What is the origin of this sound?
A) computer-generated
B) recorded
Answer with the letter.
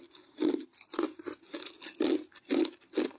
B